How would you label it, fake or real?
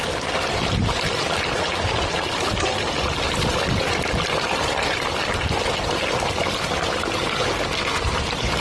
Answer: real